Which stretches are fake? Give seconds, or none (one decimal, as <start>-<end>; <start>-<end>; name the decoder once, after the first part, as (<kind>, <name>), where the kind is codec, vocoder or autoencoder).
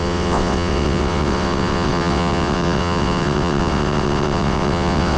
0.0-5.2 (vocoder, WaveNeXt)